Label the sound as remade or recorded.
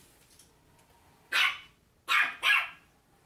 recorded